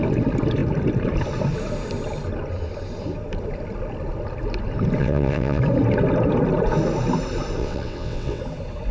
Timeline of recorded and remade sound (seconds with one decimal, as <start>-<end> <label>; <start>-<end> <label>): 0.0-5.0 recorded; 5.0-5.6 remade; 5.6-7.6 recorded; 7.6-8.4 remade; 8.4-8.9 recorded